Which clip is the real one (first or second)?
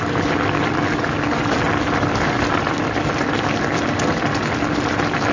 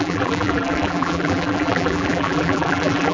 first